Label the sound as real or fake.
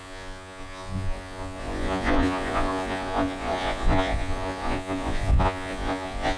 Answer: fake